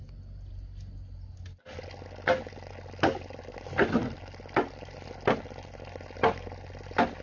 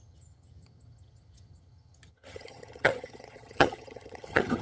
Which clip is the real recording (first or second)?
first